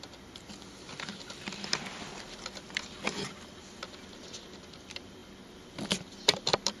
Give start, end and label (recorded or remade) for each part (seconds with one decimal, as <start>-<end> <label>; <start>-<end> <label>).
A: 0.0-6.8 remade